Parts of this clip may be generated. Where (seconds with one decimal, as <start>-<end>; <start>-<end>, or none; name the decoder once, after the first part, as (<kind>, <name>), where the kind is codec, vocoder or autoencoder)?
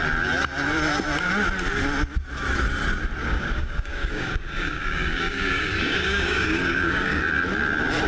3.2-7.2 (codec, DAC)